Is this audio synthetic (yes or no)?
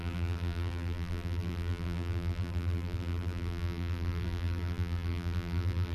yes